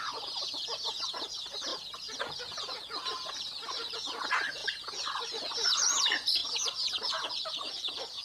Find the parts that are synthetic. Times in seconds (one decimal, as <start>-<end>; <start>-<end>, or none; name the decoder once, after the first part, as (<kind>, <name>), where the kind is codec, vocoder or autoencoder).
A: 0.0-8.2 (vocoder, Vocos)